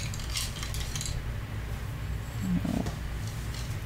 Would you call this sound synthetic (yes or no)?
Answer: no